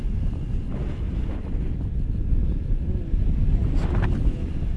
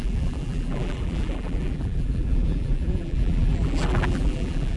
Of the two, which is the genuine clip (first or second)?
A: first